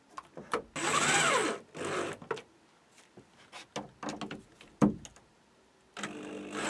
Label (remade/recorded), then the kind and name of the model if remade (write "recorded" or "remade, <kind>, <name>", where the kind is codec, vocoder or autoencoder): recorded